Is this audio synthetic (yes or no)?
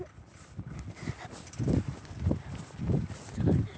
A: no